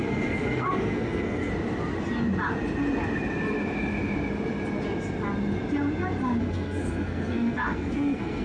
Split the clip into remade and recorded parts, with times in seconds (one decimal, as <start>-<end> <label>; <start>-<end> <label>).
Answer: 0.0-1.5 remade; 1.5-6.4 recorded; 6.4-8.4 remade